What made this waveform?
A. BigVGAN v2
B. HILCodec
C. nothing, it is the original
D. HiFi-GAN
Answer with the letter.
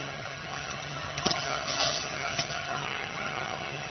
D